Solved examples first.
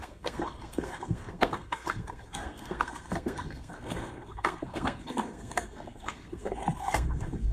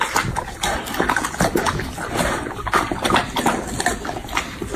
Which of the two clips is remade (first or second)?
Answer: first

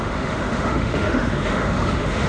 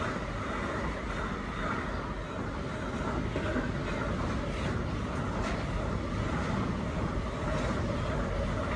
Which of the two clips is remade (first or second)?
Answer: first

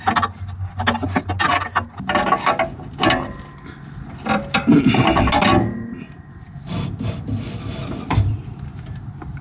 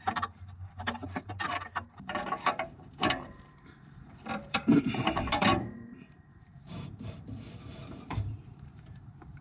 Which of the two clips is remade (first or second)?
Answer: second